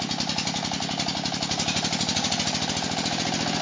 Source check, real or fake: real